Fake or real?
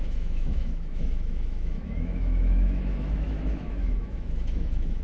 fake